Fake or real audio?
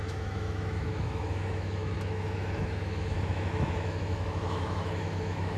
fake